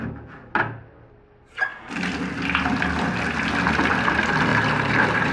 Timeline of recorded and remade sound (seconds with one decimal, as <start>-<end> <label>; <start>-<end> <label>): 0.0-4.5 recorded; 4.5-5.3 remade